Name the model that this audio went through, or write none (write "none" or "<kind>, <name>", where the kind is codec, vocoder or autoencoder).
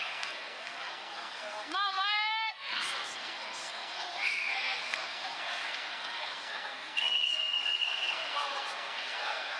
codec, SNAC